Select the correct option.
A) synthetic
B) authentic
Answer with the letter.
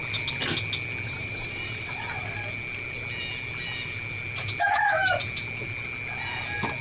B